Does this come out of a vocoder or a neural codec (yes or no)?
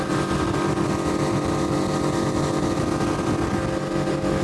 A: no